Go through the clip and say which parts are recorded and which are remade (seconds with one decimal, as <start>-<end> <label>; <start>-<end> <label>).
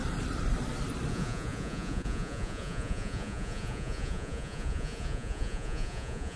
0.0-1.1 recorded; 1.1-6.4 remade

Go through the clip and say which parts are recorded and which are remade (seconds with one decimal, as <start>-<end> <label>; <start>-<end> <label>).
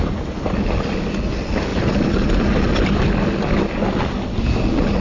0.0-5.0 recorded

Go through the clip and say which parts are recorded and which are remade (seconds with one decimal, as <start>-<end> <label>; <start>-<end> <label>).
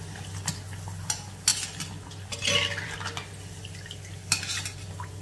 0.0-5.2 recorded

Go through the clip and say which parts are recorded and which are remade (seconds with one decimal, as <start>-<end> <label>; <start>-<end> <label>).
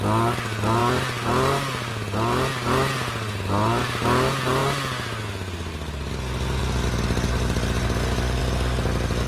0.0-9.3 recorded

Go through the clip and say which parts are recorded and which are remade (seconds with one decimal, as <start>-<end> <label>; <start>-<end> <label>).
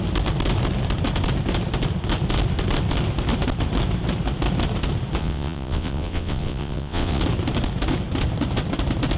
0.0-5.2 recorded; 5.2-7.2 remade; 7.2-9.2 recorded